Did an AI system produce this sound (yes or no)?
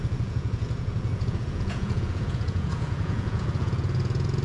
yes